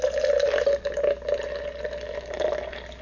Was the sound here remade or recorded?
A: recorded